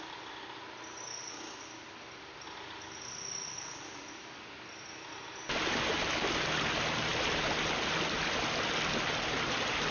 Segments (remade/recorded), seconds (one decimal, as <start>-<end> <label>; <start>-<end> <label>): 0.0-9.9 recorded